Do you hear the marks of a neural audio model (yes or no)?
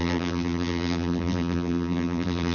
yes